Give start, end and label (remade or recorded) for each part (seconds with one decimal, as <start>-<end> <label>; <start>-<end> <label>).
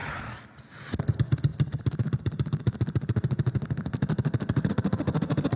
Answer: 0.0-5.6 recorded